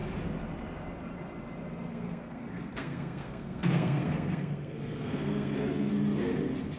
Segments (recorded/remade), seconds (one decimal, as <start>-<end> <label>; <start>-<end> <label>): 0.0-1.9 recorded; 1.9-5.9 remade; 5.9-6.8 recorded